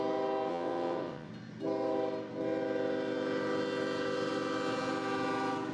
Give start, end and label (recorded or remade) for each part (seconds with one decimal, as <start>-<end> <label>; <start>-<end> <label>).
0.0-0.5 recorded; 0.5-1.3 remade; 1.3-5.7 recorded